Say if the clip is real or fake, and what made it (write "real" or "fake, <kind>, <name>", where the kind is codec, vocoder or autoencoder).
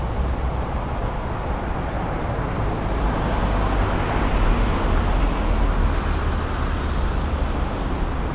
real